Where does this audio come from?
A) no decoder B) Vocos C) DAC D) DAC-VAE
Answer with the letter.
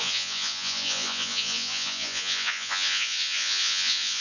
B